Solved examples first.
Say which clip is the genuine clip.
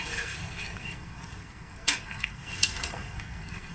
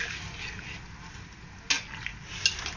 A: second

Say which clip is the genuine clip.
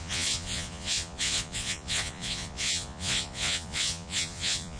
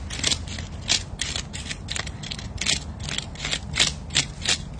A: second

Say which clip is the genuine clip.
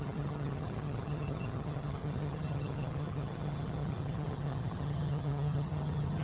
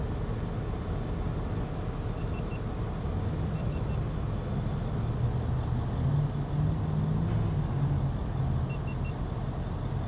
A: second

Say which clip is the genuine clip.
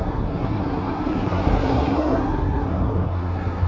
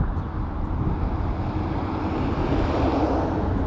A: second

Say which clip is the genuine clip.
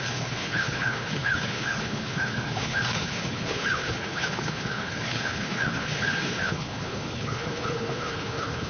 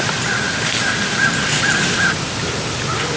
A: second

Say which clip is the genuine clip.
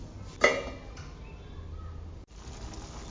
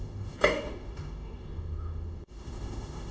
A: first